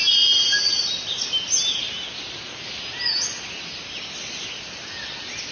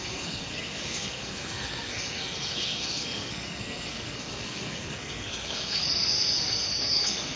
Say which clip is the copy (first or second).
second